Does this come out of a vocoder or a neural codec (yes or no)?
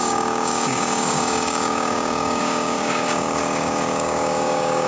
yes